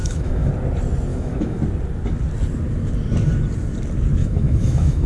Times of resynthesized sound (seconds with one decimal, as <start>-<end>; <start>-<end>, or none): 0.0-0.5; 1.1-1.6; 4.2-5.1